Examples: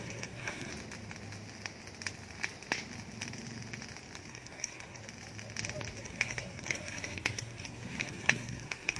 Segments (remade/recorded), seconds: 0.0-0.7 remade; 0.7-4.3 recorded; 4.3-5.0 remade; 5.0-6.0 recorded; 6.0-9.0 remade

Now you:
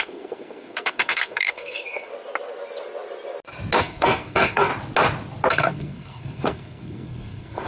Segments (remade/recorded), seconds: 0.0-2.1 remade; 2.1-3.8 recorded; 3.8-4.7 remade; 4.7-5.5 recorded; 5.5-7.7 remade

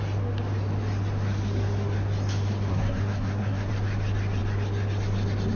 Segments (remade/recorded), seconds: 0.0-2.7 recorded; 2.7-3.7 remade; 3.7-5.6 recorded

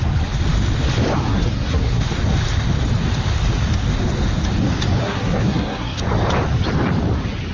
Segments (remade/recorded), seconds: 0.0-1.3 recorded; 1.3-2.0 remade; 2.0-5.0 recorded; 5.0-6.0 remade; 6.0-7.5 recorded

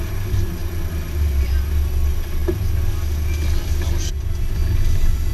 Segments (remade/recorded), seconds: 0.0-5.3 recorded

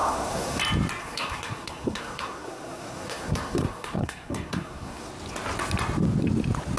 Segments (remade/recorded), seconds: 0.0-0.6 remade; 0.6-1.0 recorded; 1.0-5.1 remade; 5.1-6.8 recorded